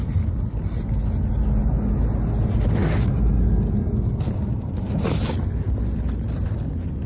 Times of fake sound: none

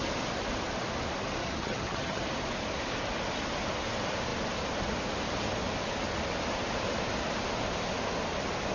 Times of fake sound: 1.4-2.2 (vocoder, HiFi-GAN)

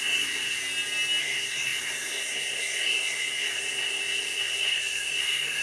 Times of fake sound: 0.0-0.6 (codec, SNAC); 1.2-5.6

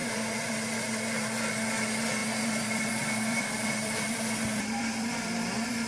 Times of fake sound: 0.0-1.1 (vocoder, BigVGAN v2); 2.2-2.9; 3.3-5.5